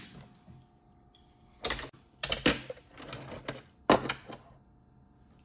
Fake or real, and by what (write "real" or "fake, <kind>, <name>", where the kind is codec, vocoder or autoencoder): real